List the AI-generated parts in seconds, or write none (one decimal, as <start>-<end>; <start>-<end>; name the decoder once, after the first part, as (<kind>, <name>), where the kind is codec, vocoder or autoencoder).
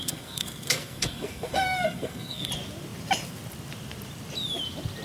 0.0-2.5 (codec, SNAC)